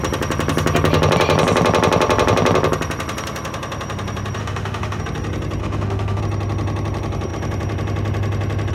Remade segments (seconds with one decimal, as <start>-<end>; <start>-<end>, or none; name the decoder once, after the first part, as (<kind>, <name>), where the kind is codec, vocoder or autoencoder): 4.4-5.0 (autoencoder, DAC-VAE); 5.6-6.2